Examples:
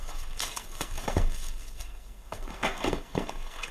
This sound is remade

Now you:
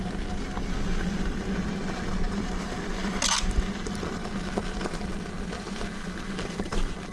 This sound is recorded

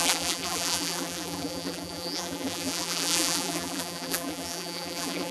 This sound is remade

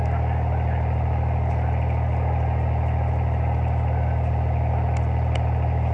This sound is recorded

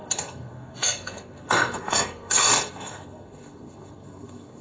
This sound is remade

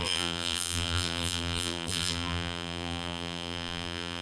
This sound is remade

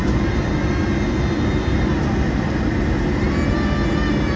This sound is recorded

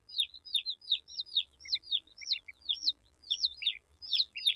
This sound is remade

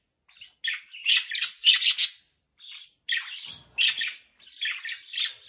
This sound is recorded